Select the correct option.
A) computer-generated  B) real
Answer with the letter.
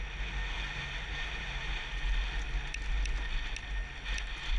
B